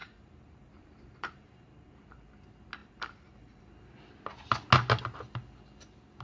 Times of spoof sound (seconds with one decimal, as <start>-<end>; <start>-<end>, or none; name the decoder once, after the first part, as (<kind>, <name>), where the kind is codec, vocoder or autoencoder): 0.0-2.3 (vocoder, BigVGAN v2); 2.8-3.6